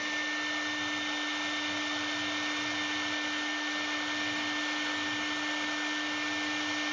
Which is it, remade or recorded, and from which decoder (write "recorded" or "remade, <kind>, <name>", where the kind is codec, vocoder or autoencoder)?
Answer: recorded